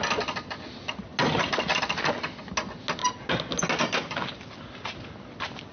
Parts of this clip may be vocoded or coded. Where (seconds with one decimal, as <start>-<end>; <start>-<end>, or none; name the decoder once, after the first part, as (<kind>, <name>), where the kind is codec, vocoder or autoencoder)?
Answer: none